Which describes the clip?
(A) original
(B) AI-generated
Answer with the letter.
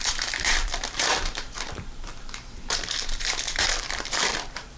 B